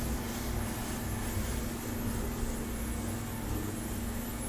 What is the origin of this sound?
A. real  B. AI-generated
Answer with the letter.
A